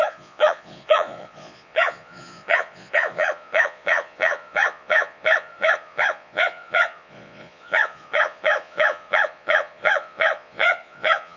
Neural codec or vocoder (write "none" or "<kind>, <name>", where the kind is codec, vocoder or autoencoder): vocoder, Vocos